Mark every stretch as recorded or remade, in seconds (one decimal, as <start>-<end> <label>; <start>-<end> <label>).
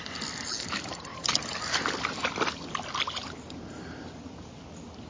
0.0-5.1 recorded